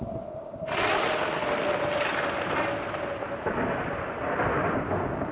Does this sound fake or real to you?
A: real